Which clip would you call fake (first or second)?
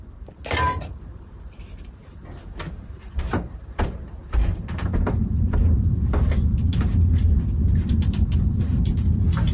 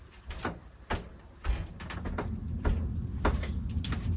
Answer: first